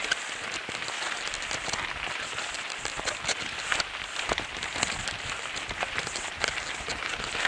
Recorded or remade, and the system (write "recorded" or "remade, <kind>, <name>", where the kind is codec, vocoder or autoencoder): recorded